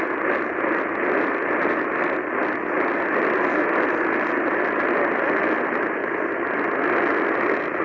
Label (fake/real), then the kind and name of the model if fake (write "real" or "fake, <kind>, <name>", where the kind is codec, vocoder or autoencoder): real